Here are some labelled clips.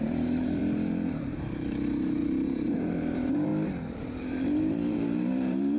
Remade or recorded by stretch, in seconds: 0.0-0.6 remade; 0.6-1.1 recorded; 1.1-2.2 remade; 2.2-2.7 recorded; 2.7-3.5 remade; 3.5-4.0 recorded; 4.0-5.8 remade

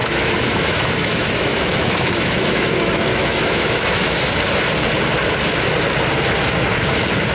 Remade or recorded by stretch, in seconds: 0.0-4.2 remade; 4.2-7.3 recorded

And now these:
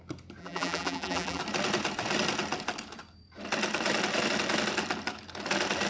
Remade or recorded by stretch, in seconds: 0.0-0.4 recorded; 0.4-1.4 remade; 1.4-5.9 recorded

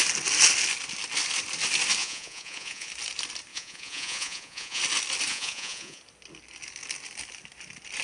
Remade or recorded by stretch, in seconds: 0.0-2.0 recorded; 2.0-2.9 remade; 2.9-3.5 recorded; 3.5-4.8 remade; 4.8-5.3 recorded; 5.3-6.0 remade; 6.0-8.0 recorded

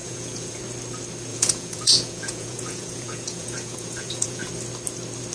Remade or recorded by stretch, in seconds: 0.0-0.6 remade; 0.6-1.3 recorded; 1.3-4.5 remade; 4.5-5.3 recorded

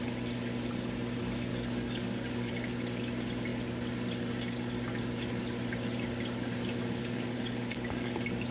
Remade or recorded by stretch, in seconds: 0.0-1.5 recorded; 1.5-2.5 remade; 2.5-7.0 recorded; 7.0-8.5 remade

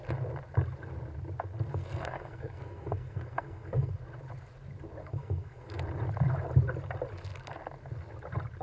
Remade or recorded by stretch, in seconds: 0.0-1.7 recorded; 1.7-3.9 remade; 3.9-5.0 recorded; 5.0-5.8 remade; 5.8-8.6 recorded